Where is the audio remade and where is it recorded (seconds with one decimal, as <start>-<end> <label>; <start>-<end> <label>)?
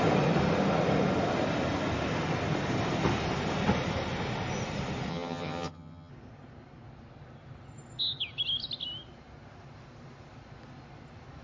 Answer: 0.0-5.1 recorded; 5.1-6.1 remade; 6.1-11.4 recorded